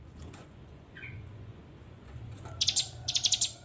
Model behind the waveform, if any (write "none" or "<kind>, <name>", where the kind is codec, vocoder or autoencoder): vocoder, Vocos